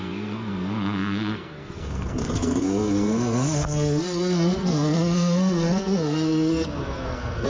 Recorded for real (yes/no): no